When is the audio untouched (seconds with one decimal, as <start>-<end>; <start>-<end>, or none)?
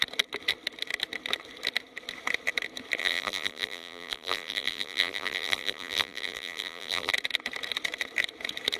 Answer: 0.0-3.0; 7.1-8.8